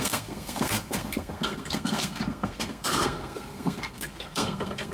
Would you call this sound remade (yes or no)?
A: yes